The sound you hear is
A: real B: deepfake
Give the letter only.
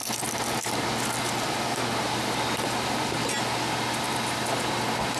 A